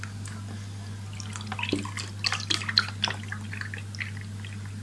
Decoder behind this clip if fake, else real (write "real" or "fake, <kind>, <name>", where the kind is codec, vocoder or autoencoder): real